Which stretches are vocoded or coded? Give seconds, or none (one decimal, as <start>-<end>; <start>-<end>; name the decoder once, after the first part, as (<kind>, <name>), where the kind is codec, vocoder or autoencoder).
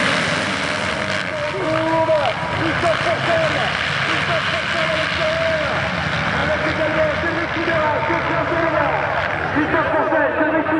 none